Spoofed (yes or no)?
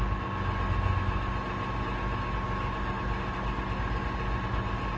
no